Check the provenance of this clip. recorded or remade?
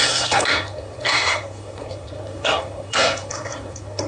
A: remade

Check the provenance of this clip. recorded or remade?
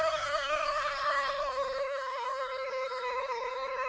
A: remade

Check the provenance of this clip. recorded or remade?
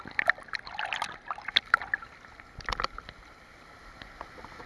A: recorded